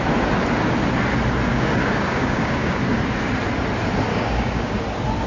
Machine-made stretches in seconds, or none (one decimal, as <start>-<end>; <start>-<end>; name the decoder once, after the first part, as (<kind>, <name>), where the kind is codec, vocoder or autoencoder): 1.5-2.8 (codec, DAC); 4.1-4.8